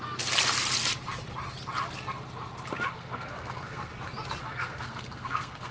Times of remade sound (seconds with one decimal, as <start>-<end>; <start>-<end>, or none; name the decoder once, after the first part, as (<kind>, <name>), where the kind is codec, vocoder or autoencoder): 2.9-3.9 (codec, SNAC); 4.4-5.7